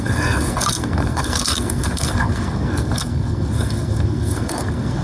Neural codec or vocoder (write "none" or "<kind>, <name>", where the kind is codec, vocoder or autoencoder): codec, SNAC